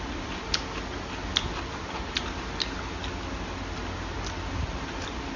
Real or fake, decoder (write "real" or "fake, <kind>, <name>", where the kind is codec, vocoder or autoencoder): real